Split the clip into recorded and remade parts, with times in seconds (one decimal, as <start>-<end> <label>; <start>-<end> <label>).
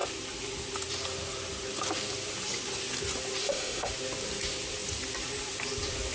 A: 0.0-3.4 recorded; 3.4-3.9 remade; 3.9-6.1 recorded